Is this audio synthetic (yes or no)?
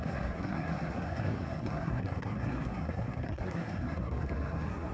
yes